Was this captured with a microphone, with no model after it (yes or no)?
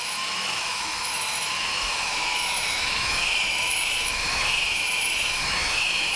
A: no